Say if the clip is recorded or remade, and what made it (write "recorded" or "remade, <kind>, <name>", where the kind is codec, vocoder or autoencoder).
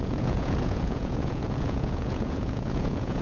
remade, vocoder, Vocos